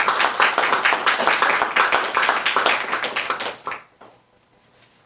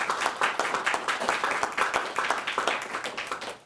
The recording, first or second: first